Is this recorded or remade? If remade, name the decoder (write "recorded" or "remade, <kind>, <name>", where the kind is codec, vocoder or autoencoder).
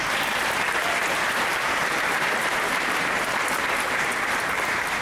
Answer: remade, vocoder, BigVGAN v2